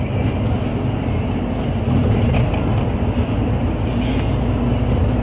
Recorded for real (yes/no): yes